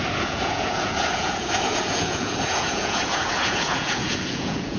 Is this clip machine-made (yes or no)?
yes